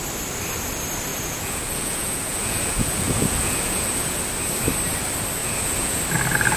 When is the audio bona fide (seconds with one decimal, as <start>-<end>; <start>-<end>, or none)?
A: 0.0-1.1; 4.2-5.4; 6.0-6.6